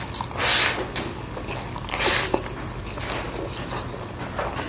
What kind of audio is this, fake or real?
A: real